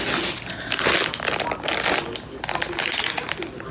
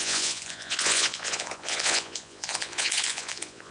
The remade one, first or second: second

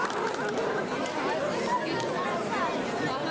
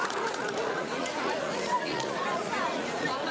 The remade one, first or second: second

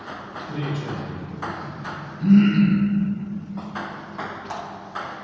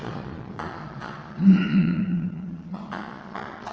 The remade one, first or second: second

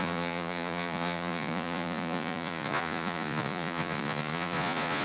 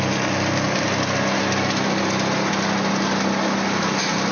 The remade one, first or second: first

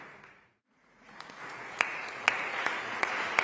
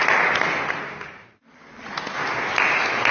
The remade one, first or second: first